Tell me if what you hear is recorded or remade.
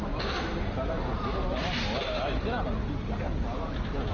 recorded